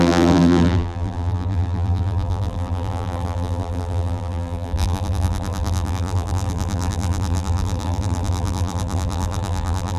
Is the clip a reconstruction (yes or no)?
yes